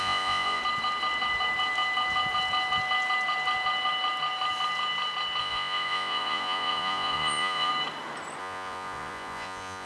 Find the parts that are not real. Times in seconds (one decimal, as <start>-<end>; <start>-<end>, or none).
0.0-0.6; 5.4-7.7; 8.4-9.9